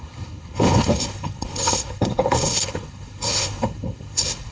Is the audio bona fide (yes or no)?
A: no